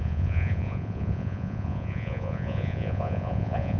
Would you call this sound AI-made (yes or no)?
yes